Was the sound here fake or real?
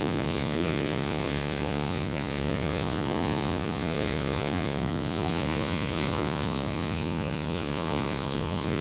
fake